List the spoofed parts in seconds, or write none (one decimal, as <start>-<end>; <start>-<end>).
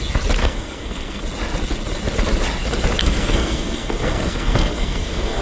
0.4-1.2; 3.0-5.4